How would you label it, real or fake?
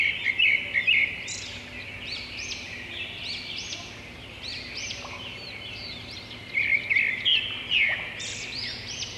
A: fake